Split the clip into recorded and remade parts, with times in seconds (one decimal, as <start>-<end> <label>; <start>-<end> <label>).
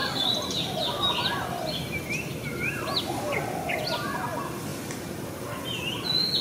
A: 0.0-2.7 remade; 2.7-6.4 recorded